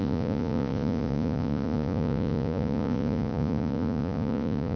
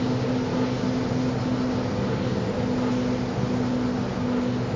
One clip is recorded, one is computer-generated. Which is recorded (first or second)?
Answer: second